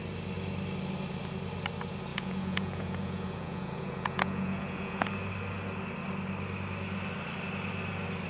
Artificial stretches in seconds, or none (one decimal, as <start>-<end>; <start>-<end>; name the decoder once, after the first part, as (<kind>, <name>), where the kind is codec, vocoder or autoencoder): 2.1-5.1 (vocoder, Vocos)